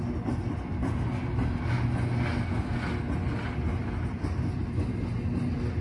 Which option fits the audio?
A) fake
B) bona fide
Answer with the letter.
B